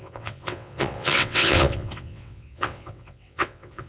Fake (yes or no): yes